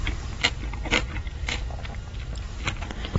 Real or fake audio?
real